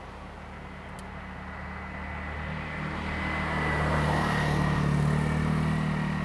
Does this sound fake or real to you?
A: real